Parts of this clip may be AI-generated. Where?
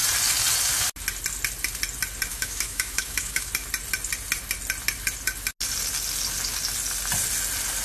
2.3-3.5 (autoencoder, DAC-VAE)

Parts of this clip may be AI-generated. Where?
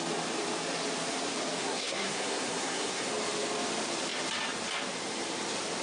1.6-3.1 (codec, SNAC)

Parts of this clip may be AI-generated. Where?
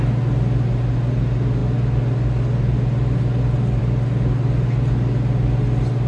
none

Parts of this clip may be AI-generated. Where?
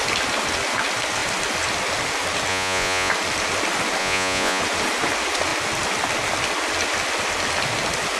2.5-3.1 (vocoder, Vocos); 4.0-4.6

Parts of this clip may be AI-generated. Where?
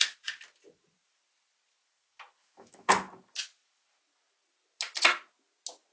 2.4-2.9 (autoencoder, DAC-VAE)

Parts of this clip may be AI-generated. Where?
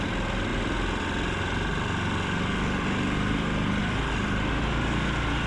none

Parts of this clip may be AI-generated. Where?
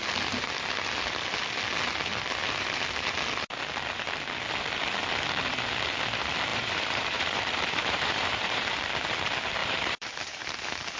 6.5-8.7 (vocoder, BigVGAN v2); 9.6-10.5